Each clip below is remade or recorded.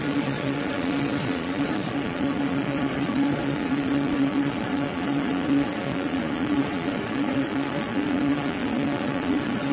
remade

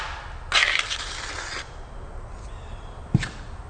recorded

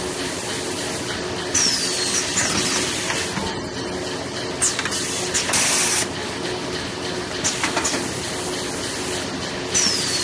recorded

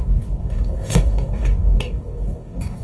remade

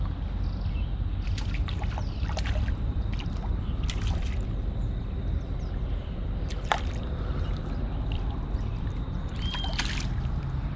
remade